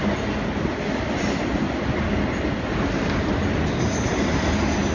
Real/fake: real